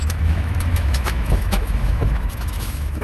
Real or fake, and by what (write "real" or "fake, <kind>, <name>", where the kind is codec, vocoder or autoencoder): fake, autoencoder, DAC-VAE